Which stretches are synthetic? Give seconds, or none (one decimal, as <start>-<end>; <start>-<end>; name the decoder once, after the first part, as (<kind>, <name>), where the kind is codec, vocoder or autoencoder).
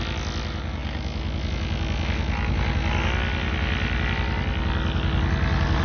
none